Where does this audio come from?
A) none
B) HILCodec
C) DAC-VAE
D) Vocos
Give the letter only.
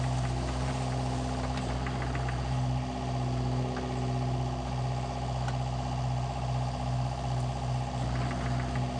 A